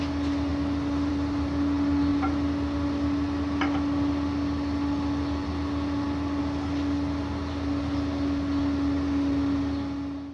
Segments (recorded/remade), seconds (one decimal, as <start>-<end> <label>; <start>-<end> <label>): 0.0-10.3 recorded